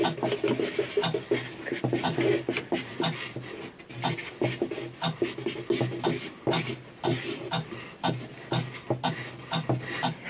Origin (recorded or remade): recorded